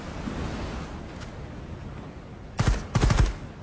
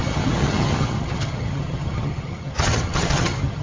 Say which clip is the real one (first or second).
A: first